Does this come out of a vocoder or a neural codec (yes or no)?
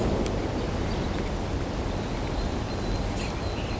no